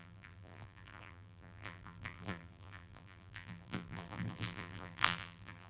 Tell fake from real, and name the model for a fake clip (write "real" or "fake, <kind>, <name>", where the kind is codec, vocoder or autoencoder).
fake, vocoder, BigVGAN v2